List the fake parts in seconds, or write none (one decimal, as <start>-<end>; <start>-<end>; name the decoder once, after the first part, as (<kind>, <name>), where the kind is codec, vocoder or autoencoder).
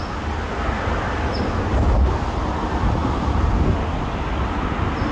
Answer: none